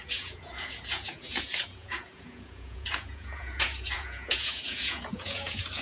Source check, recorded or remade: remade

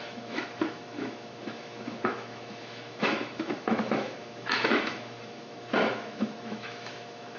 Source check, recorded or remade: remade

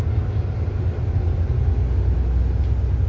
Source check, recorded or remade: recorded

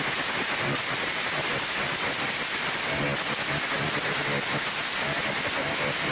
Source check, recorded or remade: recorded